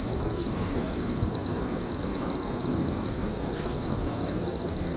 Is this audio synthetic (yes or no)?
yes